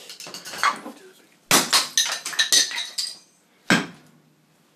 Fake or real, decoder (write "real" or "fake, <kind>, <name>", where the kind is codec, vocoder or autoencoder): real